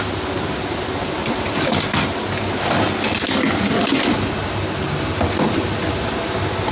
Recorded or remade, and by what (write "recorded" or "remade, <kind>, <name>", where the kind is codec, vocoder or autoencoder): recorded